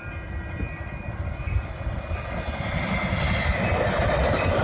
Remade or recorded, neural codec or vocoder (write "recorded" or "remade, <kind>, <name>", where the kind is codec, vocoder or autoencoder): recorded